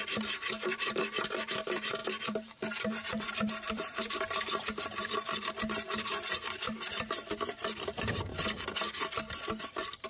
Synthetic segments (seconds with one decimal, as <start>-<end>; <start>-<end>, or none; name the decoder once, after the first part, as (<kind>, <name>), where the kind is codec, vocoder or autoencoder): 0.0-8.3 (vocoder, BigVGAN v2); 9.6-10.1